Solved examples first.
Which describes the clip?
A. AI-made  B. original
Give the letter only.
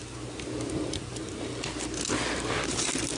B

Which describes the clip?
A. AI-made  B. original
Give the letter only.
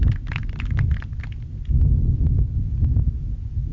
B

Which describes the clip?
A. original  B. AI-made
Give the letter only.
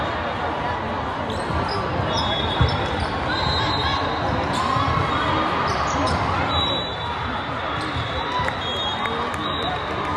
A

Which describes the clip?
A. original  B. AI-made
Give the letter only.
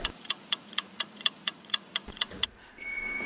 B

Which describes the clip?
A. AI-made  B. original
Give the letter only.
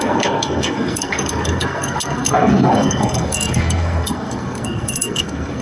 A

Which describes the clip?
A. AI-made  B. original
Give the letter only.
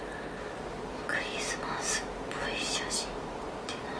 B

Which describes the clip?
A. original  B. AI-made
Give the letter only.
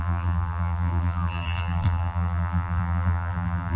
B